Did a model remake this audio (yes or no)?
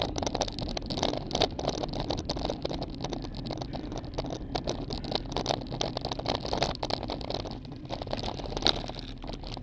no